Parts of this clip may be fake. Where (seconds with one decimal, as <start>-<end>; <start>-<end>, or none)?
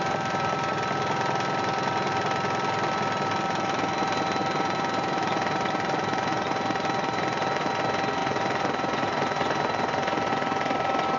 4.4-7.7; 8.2-10.3